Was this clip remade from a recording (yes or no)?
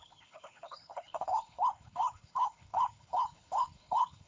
yes